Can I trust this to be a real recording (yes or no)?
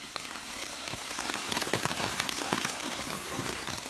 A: no